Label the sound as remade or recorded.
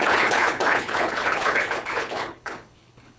remade